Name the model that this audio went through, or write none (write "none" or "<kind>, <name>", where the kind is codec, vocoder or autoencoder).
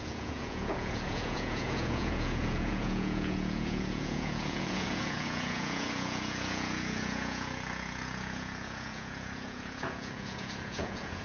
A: vocoder, Vocos